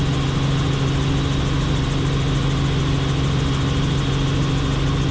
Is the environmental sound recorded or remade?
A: recorded